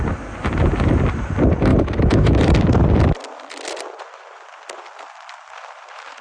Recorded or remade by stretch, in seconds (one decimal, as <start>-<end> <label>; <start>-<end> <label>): 0.0-1.7 recorded; 1.7-2.4 remade; 2.4-6.2 recorded